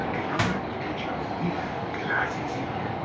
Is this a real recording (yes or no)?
no